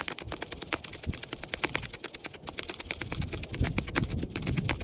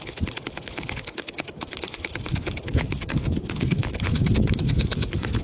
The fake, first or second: second